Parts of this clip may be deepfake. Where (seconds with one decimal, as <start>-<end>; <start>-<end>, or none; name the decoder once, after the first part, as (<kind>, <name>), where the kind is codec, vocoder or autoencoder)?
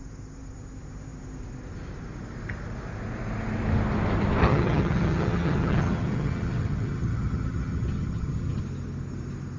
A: 4.4-8.6 (vocoder, HiFi-GAN)